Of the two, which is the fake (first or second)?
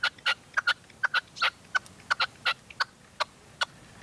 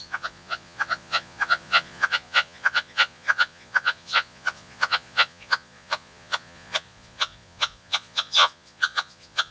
second